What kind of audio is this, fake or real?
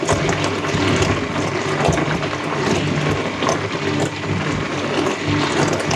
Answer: real